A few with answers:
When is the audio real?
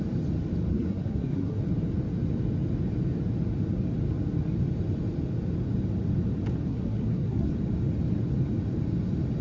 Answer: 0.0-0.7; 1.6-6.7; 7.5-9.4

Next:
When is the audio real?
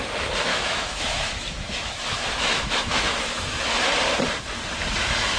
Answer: 0.0-0.5; 3.7-5.4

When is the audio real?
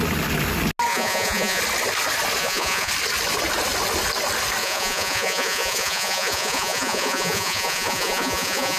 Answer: 0.0-0.9; 1.6-2.4; 2.9-4.6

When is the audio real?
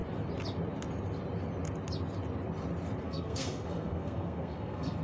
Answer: 0.0-3.0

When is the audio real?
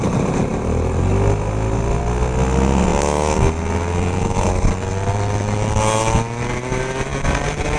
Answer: 0.0-7.8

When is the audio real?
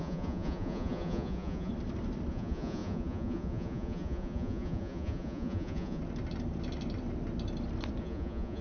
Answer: 1.7-2.3; 6.0-8.0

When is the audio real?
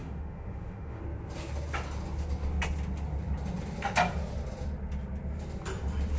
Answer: 1.0-6.2